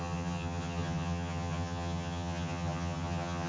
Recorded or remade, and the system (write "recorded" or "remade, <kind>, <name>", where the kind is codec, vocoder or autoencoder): remade, vocoder, HiFi-GAN